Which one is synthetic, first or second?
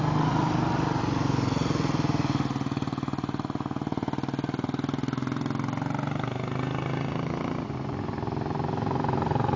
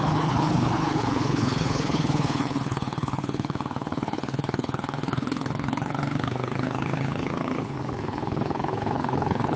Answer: second